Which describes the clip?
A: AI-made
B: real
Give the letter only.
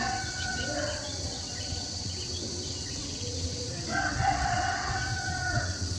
A